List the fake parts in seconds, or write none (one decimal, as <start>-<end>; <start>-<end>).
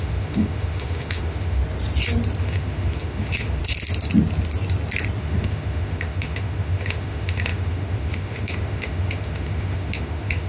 0.0-1.6; 2.4-3.6; 5.2-10.5